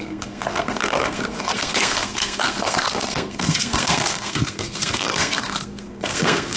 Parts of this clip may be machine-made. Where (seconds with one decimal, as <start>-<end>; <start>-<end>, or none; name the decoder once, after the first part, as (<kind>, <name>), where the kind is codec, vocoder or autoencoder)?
0.0-6.6 (codec, SNAC)